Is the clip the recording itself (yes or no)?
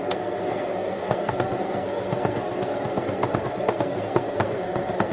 no